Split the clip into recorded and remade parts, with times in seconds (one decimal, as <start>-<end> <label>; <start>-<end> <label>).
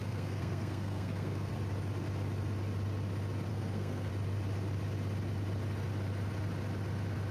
0.0-1.5 remade; 1.5-3.5 recorded; 3.5-4.1 remade; 4.1-7.3 recorded